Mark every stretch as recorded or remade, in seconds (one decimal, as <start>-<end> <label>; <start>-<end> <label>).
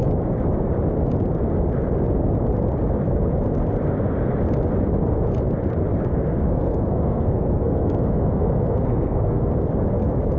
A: 0.0-6.1 recorded; 6.1-9.5 remade; 9.5-10.4 recorded